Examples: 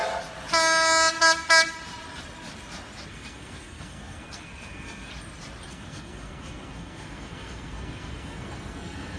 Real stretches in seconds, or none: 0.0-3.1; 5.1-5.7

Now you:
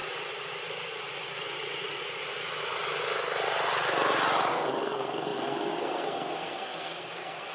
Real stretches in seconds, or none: 0.0-4.5

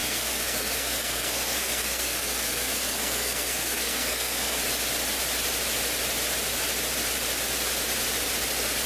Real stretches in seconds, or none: 4.6-8.9